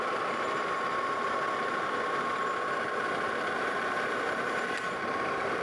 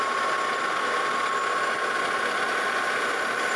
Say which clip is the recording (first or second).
second